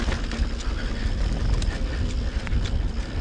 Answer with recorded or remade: recorded